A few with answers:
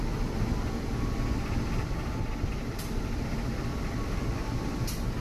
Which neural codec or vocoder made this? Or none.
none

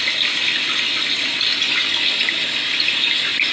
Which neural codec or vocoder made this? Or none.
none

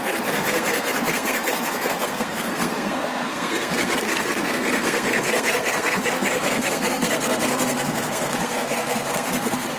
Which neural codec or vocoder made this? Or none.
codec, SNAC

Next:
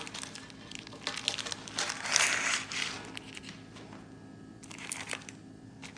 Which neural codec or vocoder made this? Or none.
none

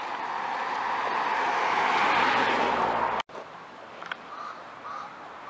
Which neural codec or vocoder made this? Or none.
none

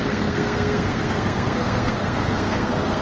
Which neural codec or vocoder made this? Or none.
codec, SNAC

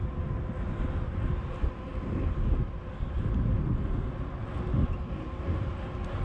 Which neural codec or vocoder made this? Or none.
none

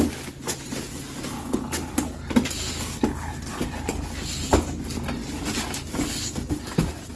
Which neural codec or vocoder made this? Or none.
none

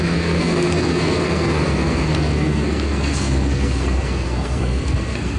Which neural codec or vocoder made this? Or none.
codec, SNAC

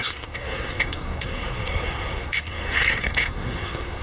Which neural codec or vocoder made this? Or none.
codec, SNAC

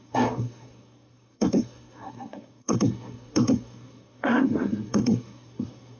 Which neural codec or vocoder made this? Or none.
codec, SNAC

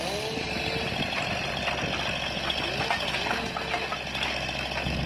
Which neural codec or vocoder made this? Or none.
none